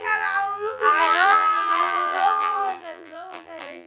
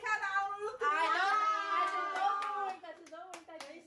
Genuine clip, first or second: second